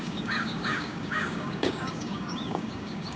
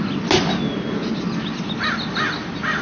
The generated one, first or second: first